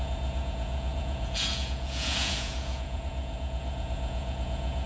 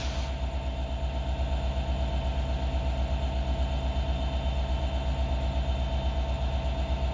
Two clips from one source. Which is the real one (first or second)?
second